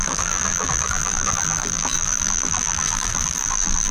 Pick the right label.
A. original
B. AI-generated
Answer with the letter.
B